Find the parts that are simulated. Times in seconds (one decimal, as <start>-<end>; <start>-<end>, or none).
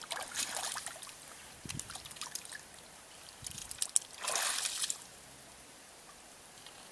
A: 0.0-3.6; 5.5-6.9